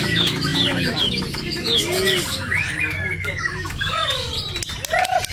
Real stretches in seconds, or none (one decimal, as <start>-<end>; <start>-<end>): 4.3-5.3